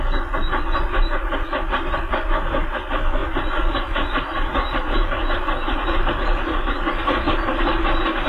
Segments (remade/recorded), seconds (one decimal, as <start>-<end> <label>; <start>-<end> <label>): 0.0-8.3 recorded